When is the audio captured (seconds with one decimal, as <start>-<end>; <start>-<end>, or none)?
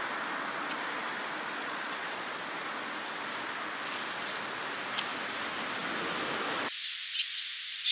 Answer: 0.0-1.6; 2.3-7.9